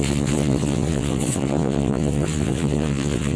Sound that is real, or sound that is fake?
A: fake